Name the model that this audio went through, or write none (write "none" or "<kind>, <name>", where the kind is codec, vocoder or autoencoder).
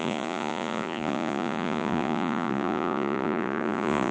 vocoder, Vocos